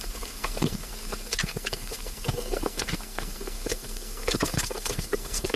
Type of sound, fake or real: fake